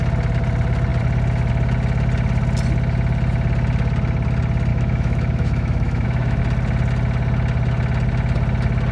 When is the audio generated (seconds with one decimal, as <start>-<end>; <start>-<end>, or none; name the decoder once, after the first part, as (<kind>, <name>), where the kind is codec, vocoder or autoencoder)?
4.7-6.4 (autoencoder, DAC-VAE)